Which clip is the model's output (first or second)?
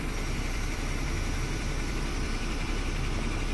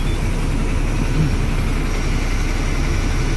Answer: first